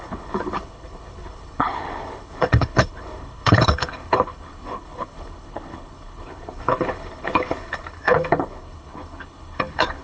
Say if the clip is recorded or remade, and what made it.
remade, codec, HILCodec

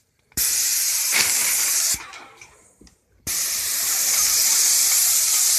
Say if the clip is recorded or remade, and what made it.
remade, vocoder, BigVGAN v2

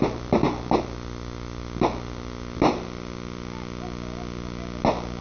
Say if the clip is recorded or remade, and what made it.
recorded